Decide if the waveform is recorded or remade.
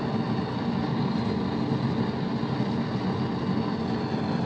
recorded